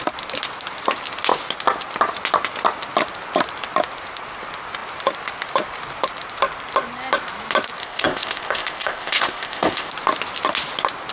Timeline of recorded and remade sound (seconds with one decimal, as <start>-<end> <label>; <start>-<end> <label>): 0.0-7.8 recorded; 7.8-9.9 remade; 9.9-11.1 recorded